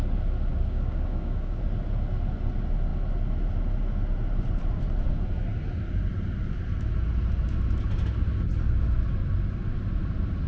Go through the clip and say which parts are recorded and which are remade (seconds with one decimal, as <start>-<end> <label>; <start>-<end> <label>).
0.0-0.5 recorded; 0.5-1.6 remade; 1.6-10.5 recorded